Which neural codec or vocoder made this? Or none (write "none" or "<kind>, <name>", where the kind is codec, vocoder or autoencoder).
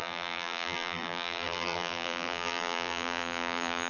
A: vocoder, BigVGAN v2